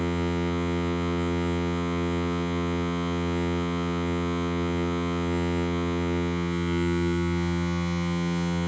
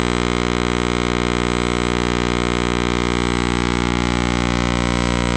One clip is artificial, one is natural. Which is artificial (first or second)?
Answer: first